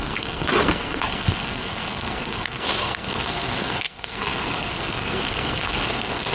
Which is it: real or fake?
fake